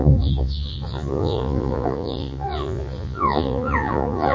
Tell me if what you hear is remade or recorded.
remade